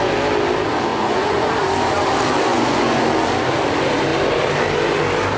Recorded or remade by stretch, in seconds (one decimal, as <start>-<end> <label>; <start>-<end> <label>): 0.0-0.9 recorded; 0.9-1.5 remade; 1.5-2.5 recorded; 2.5-3.0 remade; 3.0-5.4 recorded